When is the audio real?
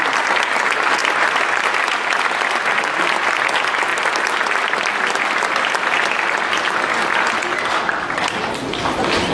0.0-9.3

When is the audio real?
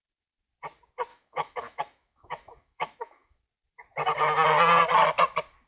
0.0-1.1; 3.4-5.7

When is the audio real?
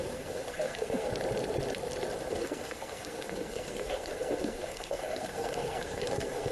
1.1-2.3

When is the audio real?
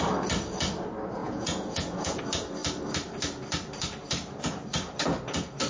0.0-1.2; 2.2-5.7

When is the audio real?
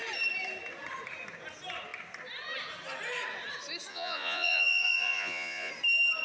0.0-3.9; 5.7-6.2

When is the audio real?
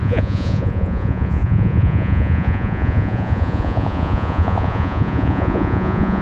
none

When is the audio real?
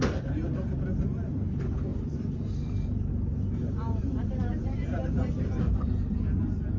0.0-1.9; 3.1-4.0; 5.9-6.8